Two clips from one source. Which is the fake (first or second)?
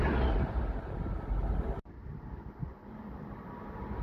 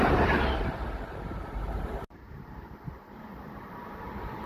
second